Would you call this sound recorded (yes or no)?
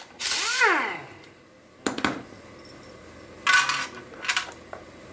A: yes